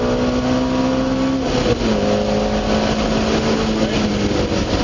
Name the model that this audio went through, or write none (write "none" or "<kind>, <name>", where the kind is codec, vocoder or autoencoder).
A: none